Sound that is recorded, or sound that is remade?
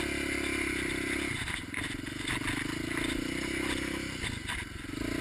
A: recorded